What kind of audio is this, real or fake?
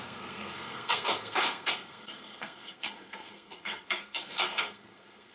fake